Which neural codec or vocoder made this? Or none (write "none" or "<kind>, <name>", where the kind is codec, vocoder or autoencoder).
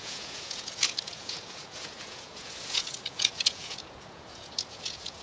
vocoder, Vocos